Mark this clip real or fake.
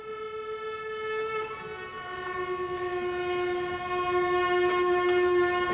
real